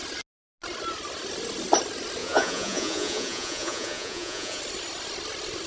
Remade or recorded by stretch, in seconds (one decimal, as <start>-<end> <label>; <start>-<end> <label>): 0.0-2.2 recorded; 2.2-4.6 remade; 4.6-5.7 recorded